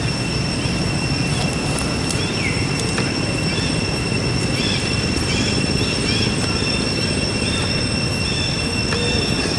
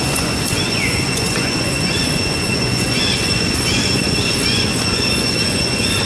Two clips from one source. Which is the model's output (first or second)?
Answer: second